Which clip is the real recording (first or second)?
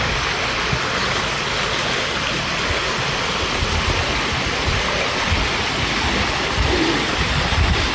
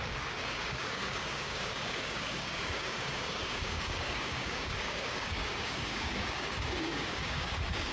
first